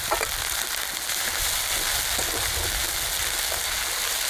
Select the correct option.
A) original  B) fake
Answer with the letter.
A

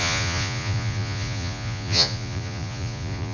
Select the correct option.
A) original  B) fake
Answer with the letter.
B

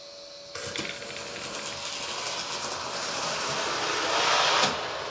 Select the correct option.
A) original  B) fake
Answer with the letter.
A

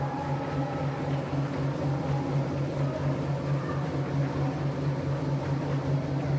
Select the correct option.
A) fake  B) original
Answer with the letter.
B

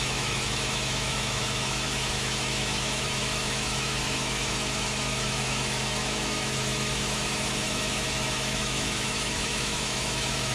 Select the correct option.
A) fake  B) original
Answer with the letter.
A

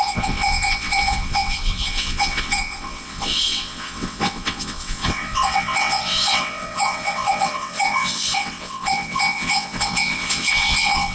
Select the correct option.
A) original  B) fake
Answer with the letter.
B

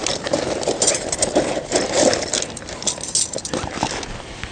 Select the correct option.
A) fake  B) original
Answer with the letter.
B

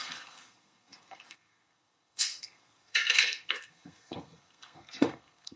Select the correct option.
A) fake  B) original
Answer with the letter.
A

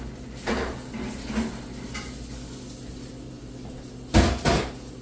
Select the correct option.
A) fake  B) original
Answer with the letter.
B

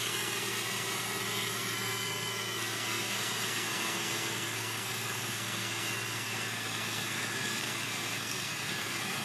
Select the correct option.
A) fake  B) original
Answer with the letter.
A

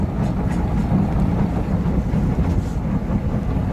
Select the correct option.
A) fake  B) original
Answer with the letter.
B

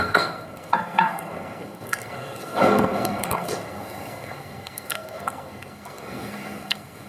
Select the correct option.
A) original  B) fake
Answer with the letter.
B